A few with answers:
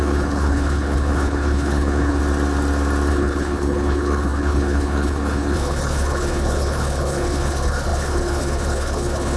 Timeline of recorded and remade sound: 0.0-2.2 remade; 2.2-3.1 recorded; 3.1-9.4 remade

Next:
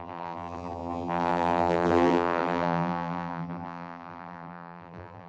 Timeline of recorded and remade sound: 0.0-5.3 remade

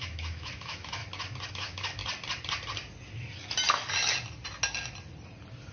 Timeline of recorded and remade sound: 0.0-1.0 remade; 1.0-1.5 recorded; 1.5-2.0 remade; 2.0-5.7 recorded